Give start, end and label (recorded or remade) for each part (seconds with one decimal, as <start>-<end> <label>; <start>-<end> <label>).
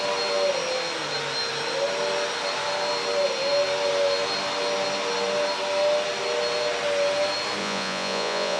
0.0-7.6 recorded; 7.6-8.6 remade